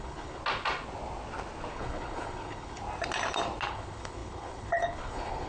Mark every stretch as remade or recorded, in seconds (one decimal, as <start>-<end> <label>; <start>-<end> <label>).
0.0-0.4 remade; 0.4-1.7 recorded; 1.7-2.8 remade; 2.8-3.7 recorded; 3.7-5.5 remade